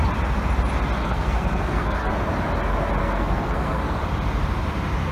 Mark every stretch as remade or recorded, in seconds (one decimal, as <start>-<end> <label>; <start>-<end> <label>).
0.0-1.0 recorded; 1.0-2.1 remade; 2.1-3.0 recorded; 3.0-4.0 remade; 4.0-5.1 recorded